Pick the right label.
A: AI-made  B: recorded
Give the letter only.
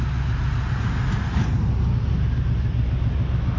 B